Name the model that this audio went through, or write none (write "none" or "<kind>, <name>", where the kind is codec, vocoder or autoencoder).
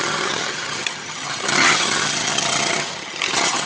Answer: vocoder, HiFi-GAN